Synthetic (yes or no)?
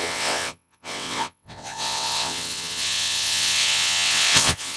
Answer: yes